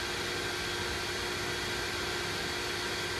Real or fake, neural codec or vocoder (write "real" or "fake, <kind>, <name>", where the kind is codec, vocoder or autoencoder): real